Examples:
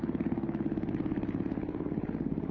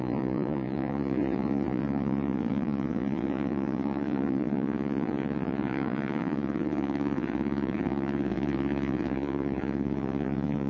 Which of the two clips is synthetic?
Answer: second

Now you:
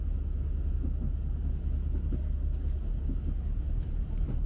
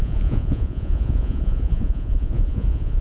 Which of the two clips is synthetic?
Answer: second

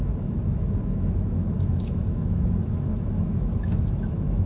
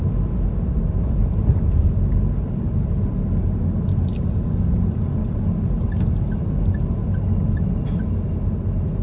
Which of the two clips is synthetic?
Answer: first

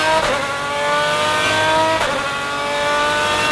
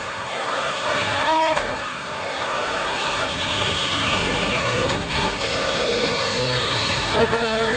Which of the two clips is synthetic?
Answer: second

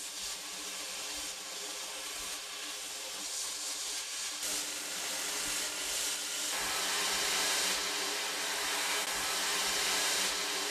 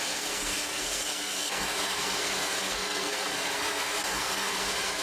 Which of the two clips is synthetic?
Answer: second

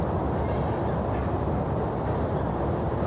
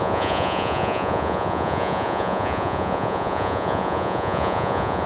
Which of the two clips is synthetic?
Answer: second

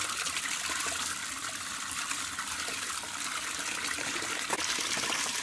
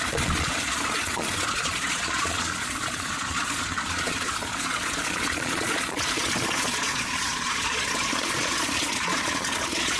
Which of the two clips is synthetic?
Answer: second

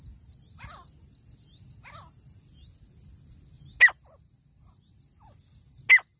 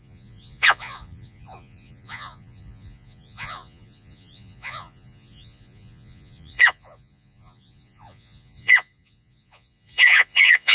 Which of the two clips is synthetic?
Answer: second